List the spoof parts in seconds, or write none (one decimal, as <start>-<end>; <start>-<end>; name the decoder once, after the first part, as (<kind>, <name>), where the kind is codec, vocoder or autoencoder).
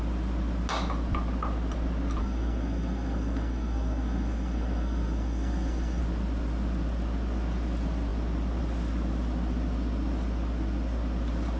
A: 2.2-6.0 (codec, SNAC)